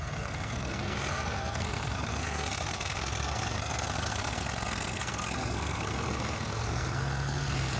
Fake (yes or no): yes